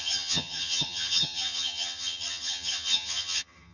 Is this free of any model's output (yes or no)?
no